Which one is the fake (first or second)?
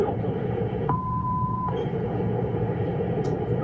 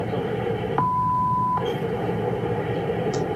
first